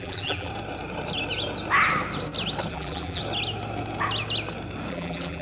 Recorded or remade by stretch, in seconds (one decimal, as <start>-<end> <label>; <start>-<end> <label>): 0.0-0.5 remade; 0.5-2.7 recorded; 2.7-3.2 remade; 3.2-4.9 recorded; 4.9-5.4 remade